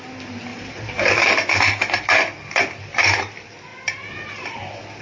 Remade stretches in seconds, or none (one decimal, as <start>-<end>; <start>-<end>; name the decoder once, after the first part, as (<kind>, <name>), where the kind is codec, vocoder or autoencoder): 0.5-1.6 (vocoder, BigVGAN v2)